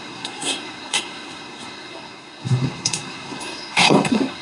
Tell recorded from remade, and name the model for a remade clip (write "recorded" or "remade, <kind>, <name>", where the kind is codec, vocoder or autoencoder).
remade, codec, SNAC